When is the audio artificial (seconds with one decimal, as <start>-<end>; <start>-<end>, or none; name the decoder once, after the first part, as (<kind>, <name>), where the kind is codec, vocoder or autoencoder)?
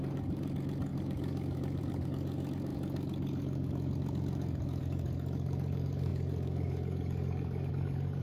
0.0-8.2 (codec, DAC)